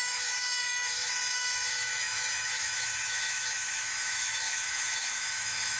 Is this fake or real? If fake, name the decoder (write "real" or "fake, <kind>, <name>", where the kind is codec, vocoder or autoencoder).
fake, autoencoder, DAC-VAE